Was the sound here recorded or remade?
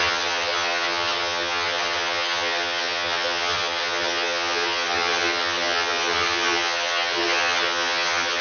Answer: remade